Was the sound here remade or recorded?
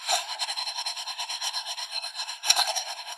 remade